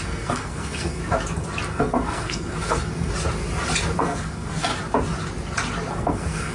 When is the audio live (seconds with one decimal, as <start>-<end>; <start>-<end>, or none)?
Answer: 1.0-1.7; 3.1-4.0; 4.7-5.9